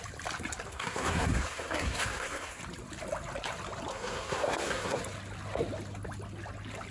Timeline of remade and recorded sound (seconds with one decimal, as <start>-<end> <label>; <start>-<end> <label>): 0.0-0.7 recorded; 0.7-2.6 remade; 2.6-3.9 recorded; 3.9-5.0 remade; 5.0-6.9 recorded